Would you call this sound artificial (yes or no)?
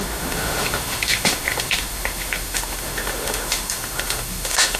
yes